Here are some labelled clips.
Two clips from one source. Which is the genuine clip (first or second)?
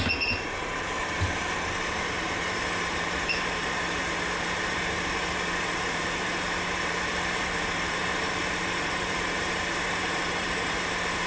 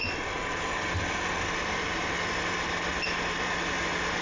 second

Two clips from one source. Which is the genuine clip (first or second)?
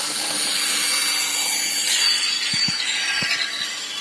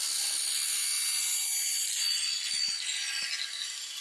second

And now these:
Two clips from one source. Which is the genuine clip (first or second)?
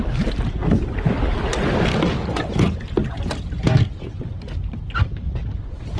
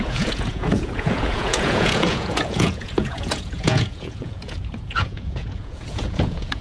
first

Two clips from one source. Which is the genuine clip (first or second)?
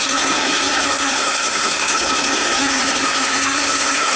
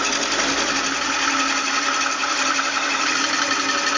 second